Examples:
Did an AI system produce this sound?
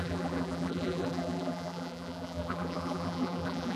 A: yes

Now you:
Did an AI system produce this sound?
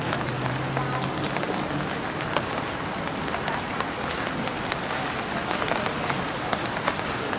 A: no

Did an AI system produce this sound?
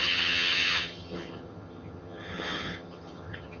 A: yes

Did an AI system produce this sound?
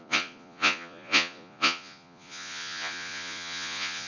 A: yes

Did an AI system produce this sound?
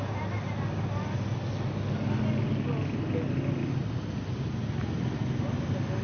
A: no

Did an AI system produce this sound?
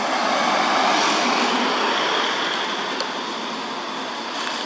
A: no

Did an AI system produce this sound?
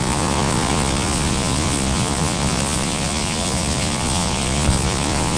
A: yes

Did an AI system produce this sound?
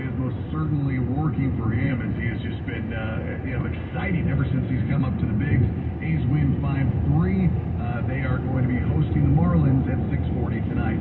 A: no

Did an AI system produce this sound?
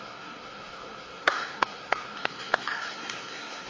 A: yes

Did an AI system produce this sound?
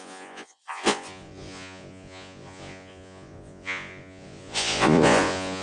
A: yes